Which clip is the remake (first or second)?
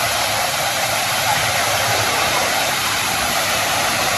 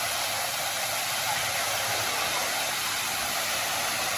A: first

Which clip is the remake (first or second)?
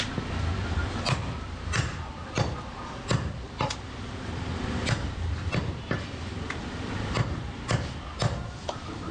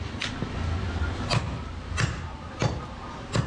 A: first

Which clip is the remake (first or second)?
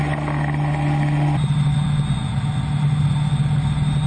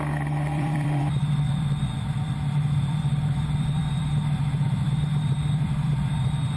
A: second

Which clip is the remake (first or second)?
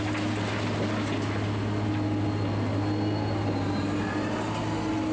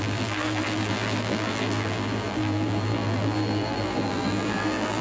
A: second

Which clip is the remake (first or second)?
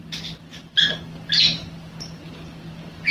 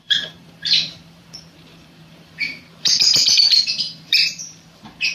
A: second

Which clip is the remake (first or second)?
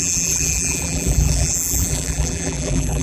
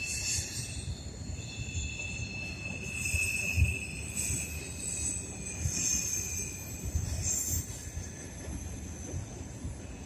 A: first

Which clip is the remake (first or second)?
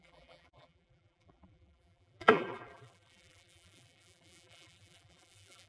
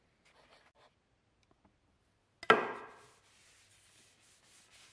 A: first